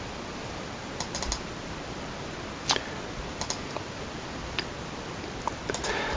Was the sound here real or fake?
real